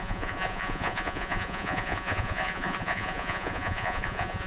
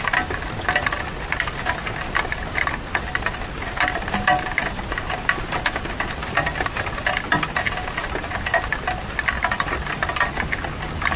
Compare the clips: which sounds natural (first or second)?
second